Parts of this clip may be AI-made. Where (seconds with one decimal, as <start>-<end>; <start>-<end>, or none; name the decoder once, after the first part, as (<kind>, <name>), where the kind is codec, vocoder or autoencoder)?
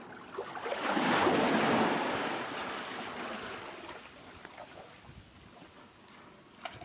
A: none